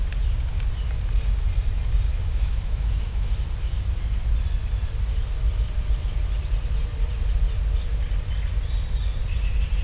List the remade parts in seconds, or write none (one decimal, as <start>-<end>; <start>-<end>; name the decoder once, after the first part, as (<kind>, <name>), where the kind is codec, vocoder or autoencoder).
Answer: 2.1-3.3 (autoencoder, DAC-VAE)